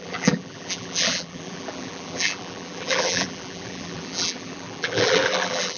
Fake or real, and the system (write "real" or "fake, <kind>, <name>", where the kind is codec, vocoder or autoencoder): fake, vocoder, BigVGAN v2